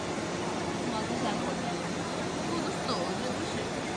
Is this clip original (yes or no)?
yes